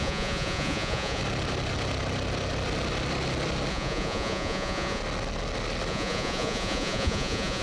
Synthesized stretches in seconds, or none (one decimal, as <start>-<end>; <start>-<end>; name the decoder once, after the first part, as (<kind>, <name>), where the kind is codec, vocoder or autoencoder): 0.0-1.2 (vocoder, Vocos); 3.7-5.0; 5.9-7.6